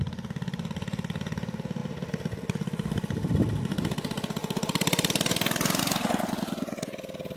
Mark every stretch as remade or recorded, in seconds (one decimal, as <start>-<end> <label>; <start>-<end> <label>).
0.0-1.8 recorded; 1.8-3.6 remade; 3.6-4.4 recorded; 4.4-5.8 remade; 5.8-7.4 recorded